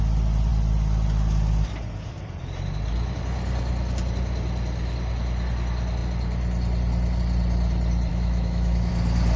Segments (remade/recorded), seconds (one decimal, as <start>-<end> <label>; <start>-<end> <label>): 0.0-8.1 recorded; 8.1-8.9 remade; 8.9-9.4 recorded